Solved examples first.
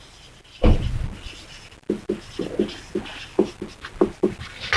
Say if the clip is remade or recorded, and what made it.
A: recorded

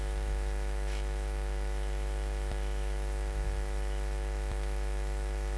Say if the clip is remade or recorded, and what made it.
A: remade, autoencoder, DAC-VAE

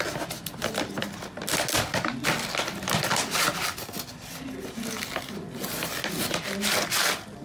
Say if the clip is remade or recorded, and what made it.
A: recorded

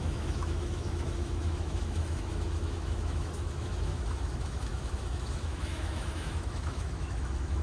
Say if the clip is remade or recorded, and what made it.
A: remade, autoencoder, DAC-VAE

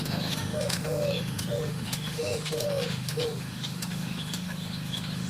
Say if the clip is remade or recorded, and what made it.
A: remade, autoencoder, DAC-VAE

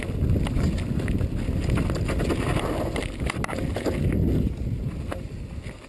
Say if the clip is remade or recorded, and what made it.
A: recorded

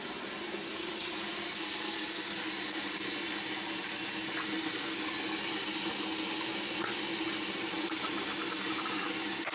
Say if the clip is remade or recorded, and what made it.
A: recorded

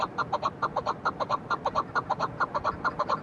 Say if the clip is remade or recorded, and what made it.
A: recorded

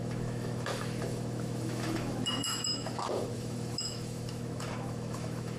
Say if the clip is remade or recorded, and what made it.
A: remade, autoencoder, DAC-VAE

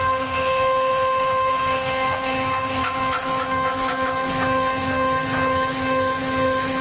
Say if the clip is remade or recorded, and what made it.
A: remade, autoencoder, DAC-VAE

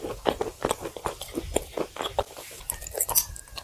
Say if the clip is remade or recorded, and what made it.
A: recorded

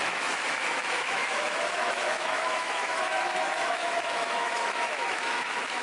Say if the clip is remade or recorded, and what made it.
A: remade, autoencoder, DAC-VAE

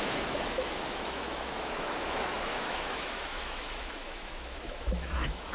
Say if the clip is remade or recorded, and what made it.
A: remade, autoencoder, DAC-VAE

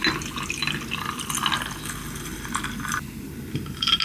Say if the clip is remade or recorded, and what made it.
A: recorded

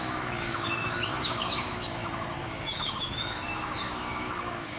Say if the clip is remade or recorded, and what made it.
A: remade, autoencoder, DAC-VAE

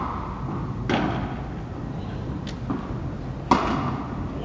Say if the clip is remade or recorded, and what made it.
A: recorded